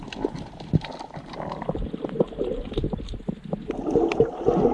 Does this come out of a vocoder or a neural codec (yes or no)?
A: no